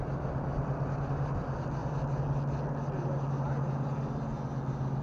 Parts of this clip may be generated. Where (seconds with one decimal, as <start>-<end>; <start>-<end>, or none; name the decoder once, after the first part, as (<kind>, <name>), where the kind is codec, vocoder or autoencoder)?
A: none